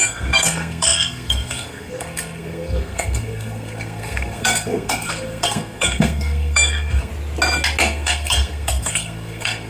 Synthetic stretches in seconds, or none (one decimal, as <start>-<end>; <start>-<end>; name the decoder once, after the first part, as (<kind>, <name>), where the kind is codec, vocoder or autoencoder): 0.0-7.1 (codec, SNAC); 7.8-9.7